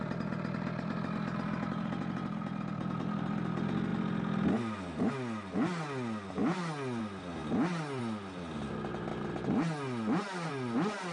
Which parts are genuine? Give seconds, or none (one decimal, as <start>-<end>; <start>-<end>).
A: 0.0-11.1